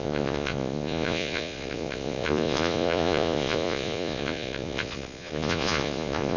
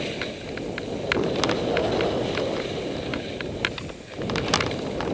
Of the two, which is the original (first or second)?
second